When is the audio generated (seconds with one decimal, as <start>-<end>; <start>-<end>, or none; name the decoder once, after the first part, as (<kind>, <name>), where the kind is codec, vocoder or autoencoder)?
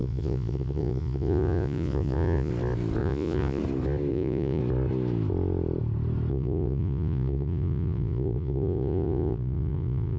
0.0-2.5 (vocoder, Vocos); 3.0-3.6; 4.1-4.6; 6.3-10.2